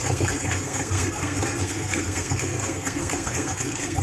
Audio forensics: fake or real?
fake